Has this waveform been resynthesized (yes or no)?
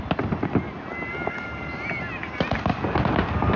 no